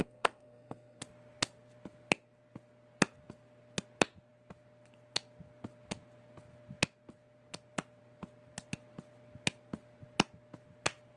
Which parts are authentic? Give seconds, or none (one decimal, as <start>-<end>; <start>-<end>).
1.0-11.2